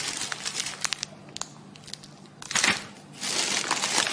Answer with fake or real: real